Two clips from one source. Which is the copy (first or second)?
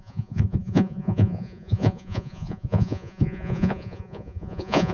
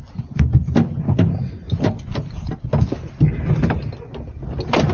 first